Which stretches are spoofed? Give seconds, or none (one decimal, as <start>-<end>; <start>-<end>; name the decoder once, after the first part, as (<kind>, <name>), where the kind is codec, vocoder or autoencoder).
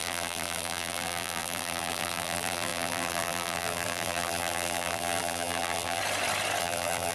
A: 0.0-6.0 (vocoder, BigVGAN v2); 6.6-7.1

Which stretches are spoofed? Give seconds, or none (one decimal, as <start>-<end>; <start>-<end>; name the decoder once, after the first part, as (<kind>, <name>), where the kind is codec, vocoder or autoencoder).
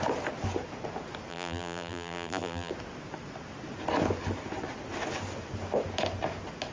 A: 1.3-2.7 (vocoder, BigVGAN v2)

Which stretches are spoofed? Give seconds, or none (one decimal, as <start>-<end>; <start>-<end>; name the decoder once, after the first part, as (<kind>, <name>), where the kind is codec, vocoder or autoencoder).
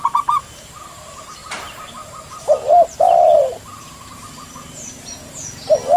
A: 1.4-5.0 (vocoder, BigVGAN v2)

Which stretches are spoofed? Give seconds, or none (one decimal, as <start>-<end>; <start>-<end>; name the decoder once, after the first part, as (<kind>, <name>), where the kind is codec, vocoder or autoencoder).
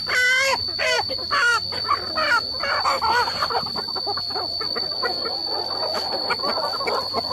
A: none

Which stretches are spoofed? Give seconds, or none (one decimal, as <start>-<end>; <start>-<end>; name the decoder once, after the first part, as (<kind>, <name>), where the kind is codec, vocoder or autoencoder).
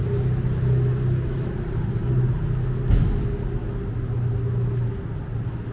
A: none